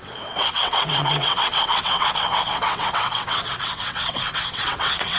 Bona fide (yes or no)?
no